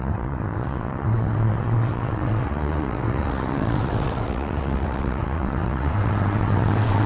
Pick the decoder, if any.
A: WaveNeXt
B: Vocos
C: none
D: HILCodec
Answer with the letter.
A